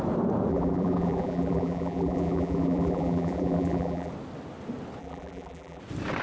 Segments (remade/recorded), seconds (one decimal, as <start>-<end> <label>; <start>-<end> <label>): 0.0-0.5 recorded; 0.5-4.1 remade; 4.1-5.0 recorded; 5.0-5.8 remade; 5.8-6.2 recorded